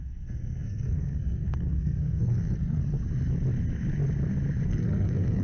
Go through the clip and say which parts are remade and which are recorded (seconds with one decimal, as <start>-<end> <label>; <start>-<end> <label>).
0.0-2.8 remade; 2.8-4.7 recorded; 4.7-5.4 remade